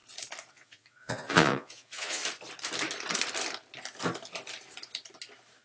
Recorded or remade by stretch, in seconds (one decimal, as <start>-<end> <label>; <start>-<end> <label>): 0.0-0.5 recorded; 0.5-2.2 remade; 2.2-5.6 recorded